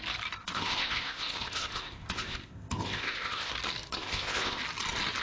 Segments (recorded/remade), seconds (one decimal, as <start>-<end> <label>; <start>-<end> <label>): 0.0-0.4 recorded; 0.4-3.5 remade; 3.5-4.0 recorded; 4.0-4.6 remade; 4.6-5.2 recorded